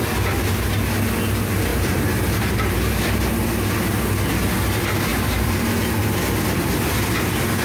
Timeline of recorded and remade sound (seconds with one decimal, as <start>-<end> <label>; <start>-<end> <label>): 0.0-1.7 recorded; 1.7-3.3 remade; 3.3-5.1 recorded; 5.1-6.9 remade; 6.9-7.6 recorded

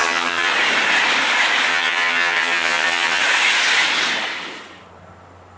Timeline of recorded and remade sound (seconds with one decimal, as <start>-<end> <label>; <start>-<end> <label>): 0.0-0.5 remade; 0.5-1.7 recorded; 1.7-3.2 remade; 3.2-5.6 recorded

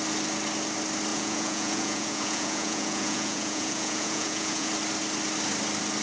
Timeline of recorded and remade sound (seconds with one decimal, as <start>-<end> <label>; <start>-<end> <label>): 0.0-1.1 recorded; 1.1-4.7 remade; 4.7-6.0 recorded

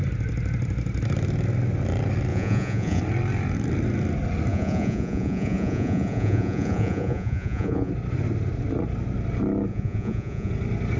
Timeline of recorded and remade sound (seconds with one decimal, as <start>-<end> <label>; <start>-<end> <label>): 0.0-2.3 recorded; 2.3-3.0 remade; 3.0-4.5 recorded; 4.5-7.9 remade; 7.9-9.7 recorded; 9.7-10.5 remade; 10.5-11.0 recorded

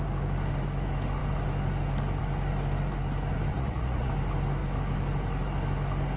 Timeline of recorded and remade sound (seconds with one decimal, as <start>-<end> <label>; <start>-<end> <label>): 0.0-3.5 recorded; 3.5-4.1 remade; 4.1-6.2 recorded

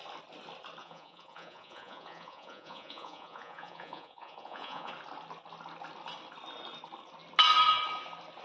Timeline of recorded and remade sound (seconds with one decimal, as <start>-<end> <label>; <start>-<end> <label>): 0.0-0.8 recorded; 0.8-4.9 remade; 4.9-8.4 recorded